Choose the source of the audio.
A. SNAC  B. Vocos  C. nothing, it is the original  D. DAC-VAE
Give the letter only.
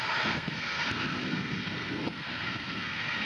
A